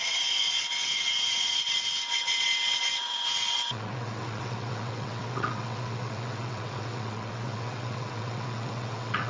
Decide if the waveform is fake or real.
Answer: fake